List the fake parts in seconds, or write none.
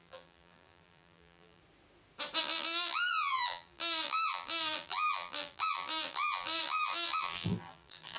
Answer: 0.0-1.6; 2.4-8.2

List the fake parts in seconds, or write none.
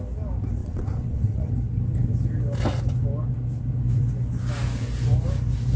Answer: 0.6-1.5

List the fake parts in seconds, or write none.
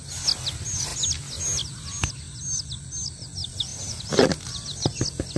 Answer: none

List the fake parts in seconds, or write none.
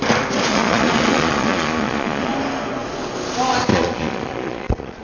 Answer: 0.5-2.3; 3.7-5.0